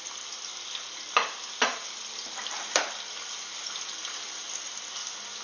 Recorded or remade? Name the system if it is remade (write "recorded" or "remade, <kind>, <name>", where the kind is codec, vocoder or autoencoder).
recorded